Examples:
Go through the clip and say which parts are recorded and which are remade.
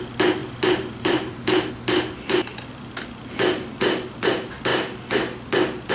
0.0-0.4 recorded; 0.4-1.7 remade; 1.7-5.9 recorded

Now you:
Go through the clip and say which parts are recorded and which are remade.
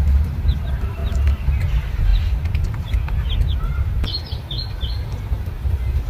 0.0-2.1 remade; 2.1-6.1 recorded